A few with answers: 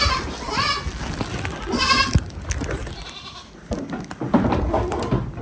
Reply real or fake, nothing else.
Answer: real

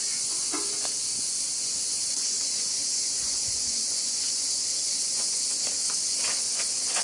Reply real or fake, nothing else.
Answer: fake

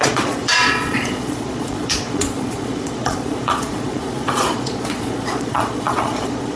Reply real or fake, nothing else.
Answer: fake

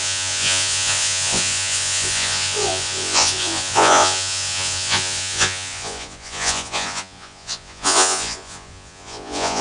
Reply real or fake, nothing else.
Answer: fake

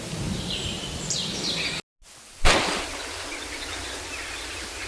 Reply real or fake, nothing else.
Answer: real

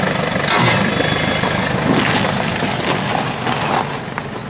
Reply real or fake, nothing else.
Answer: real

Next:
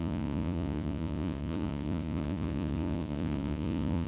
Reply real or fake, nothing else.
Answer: fake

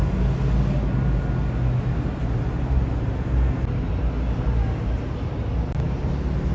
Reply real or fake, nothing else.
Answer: real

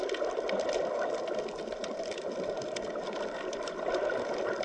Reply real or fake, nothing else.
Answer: real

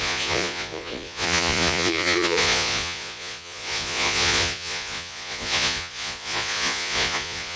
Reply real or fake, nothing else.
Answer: fake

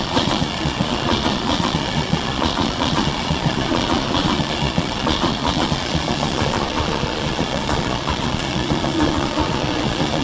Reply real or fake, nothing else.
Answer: fake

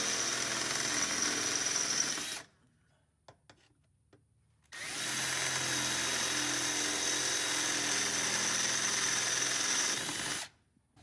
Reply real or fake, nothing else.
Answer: real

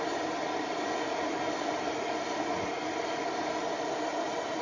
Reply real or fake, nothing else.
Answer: real